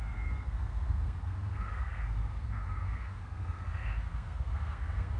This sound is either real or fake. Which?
fake